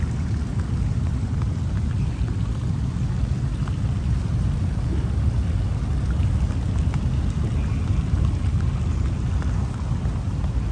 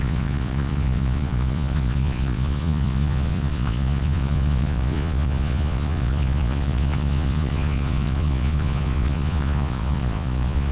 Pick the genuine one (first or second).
first